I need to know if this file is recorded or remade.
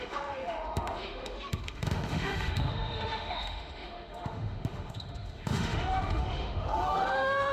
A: remade